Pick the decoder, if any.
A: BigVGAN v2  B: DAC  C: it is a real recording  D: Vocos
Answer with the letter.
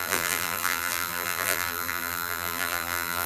A